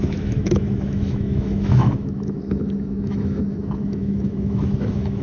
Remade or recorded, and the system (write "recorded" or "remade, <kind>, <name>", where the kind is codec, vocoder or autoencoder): remade, autoencoder, DAC-VAE